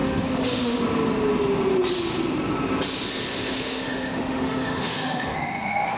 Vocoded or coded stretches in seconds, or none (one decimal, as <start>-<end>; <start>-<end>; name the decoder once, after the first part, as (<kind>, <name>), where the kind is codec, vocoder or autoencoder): 0.0-0.8 (autoencoder, DAC-VAE); 3.3-6.0